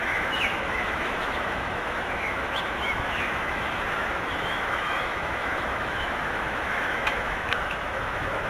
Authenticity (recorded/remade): remade